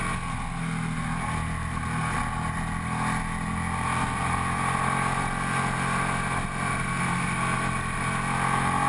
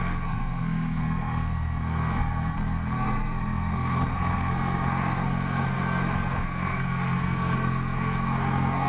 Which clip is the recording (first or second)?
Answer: first